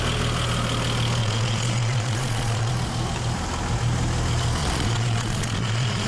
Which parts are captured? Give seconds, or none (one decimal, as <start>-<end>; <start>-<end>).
0.0-1.2; 2.7-4.6